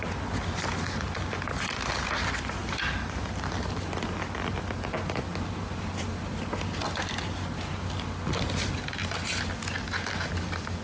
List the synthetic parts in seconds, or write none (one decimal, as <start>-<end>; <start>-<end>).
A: none